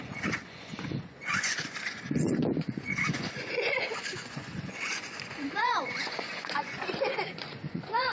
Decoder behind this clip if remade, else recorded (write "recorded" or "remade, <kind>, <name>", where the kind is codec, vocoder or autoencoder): remade, vocoder, Vocos